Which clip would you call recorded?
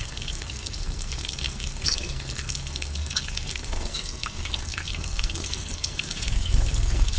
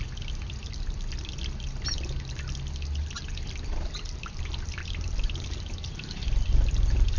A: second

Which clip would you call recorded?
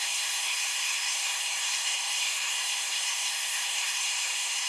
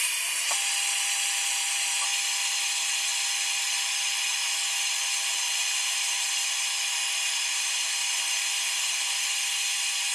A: second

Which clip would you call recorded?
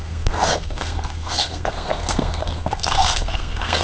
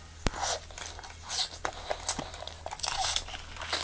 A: second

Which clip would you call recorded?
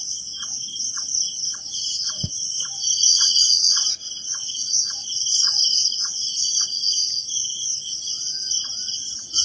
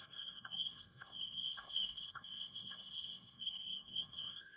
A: first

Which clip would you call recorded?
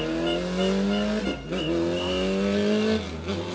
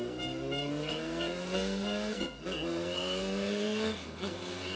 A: first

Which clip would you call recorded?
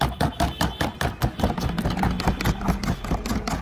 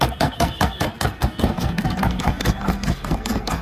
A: first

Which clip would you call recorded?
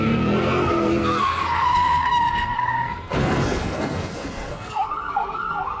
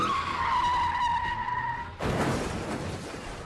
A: second